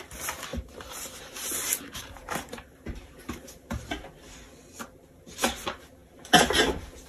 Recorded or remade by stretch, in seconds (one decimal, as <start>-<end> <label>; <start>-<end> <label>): 0.0-0.5 recorded; 0.5-4.1 remade; 4.1-7.1 recorded